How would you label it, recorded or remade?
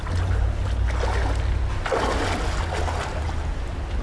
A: recorded